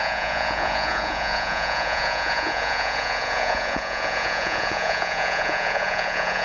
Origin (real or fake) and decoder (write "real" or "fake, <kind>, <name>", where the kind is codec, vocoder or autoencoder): fake, vocoder, Vocos